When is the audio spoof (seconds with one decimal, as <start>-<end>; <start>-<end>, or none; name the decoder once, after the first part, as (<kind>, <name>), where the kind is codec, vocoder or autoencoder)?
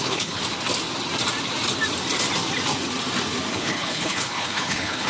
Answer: 0.0-0.4 (codec, HILCodec); 3.5-5.1